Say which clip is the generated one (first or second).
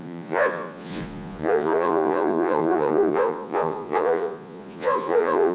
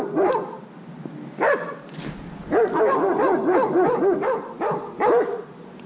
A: first